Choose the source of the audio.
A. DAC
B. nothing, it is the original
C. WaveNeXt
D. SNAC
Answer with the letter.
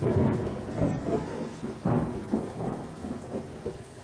D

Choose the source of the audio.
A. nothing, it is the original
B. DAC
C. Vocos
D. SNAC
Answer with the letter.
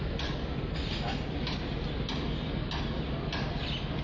A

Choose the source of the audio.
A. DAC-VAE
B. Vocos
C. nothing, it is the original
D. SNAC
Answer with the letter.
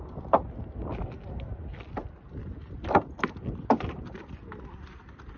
C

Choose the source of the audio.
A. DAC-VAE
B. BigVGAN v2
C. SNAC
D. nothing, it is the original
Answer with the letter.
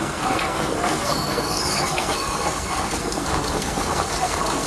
C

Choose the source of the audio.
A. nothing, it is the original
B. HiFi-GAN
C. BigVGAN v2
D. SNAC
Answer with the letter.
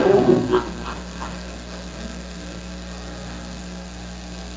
D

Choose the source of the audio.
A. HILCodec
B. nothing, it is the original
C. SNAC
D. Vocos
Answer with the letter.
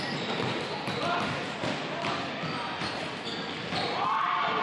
B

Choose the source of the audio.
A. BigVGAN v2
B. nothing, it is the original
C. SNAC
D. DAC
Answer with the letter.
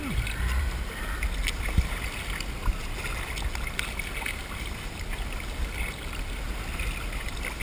B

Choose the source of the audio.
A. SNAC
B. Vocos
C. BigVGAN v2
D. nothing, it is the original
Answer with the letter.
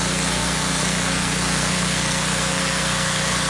A